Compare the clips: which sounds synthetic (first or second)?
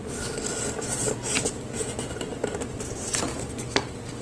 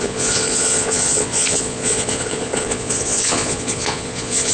second